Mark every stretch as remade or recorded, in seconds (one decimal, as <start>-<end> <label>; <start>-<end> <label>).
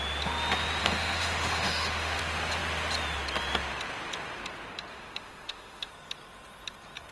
0.0-0.8 recorded; 0.8-2.2 remade; 2.2-4.9 recorded; 4.9-5.9 remade; 5.9-7.1 recorded